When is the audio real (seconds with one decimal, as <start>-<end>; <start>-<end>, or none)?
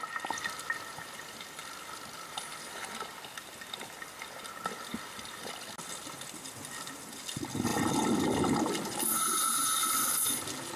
0.0-1.6; 2.6-4.9; 5.7-7.7; 8.6-10.8